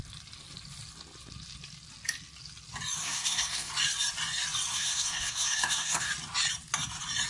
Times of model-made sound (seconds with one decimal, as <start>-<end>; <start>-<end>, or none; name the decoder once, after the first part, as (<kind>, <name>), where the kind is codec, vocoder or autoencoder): 3.0-3.7 (codec, SNAC); 4.7-6.1